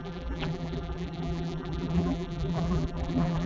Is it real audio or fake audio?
fake